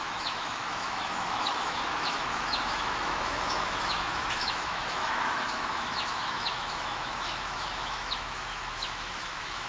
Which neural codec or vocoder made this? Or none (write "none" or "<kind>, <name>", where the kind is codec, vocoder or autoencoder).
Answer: autoencoder, DAC-VAE